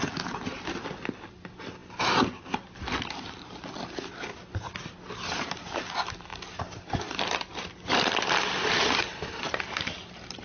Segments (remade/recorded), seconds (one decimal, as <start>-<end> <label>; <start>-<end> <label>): 0.0-1.8 recorded; 1.8-3.3 remade; 3.3-7.5 recorded; 7.5-9.5 remade; 9.5-10.4 recorded